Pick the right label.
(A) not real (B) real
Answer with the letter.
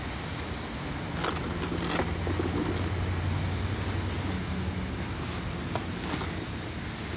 B